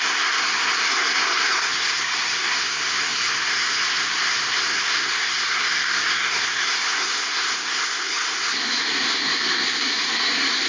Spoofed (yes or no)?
yes